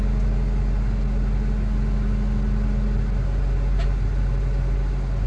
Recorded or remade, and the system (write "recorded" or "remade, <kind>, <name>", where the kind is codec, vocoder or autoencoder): recorded